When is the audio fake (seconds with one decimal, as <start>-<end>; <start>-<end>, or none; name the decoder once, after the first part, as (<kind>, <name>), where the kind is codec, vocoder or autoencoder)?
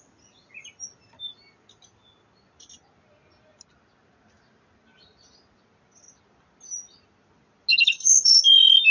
7.7-8.4 (codec, HILCodec)